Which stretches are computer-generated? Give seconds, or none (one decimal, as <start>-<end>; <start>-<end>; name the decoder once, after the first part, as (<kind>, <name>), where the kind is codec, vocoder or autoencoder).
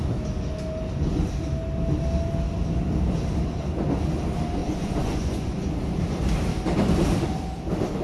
4.6-5.7 (vocoder, Vocos)